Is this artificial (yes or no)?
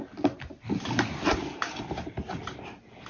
yes